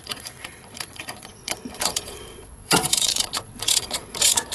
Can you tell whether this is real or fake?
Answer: fake